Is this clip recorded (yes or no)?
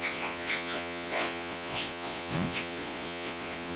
no